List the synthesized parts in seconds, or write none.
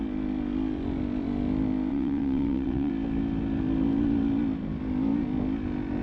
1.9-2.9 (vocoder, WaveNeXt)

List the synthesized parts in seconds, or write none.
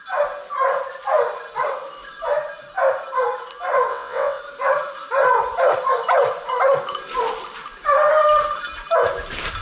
3.9-4.4 (vocoder, WaveNeXt)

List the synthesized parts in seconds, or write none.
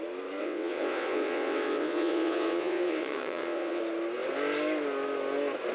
0.4-3.8 (vocoder, WaveNeXt)